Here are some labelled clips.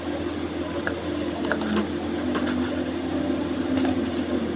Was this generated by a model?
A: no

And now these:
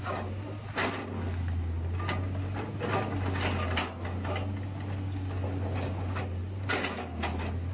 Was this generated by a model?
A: no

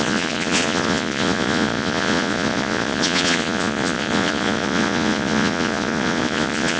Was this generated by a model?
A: yes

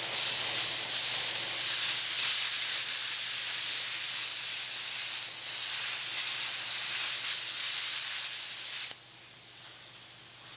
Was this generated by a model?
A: no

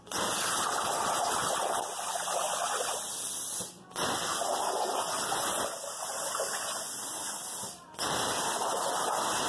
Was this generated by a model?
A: no